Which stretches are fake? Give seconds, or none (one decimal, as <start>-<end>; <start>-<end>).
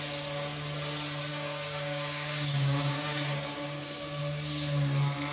1.3-4.2